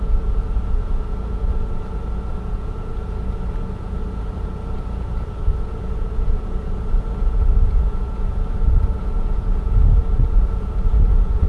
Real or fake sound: fake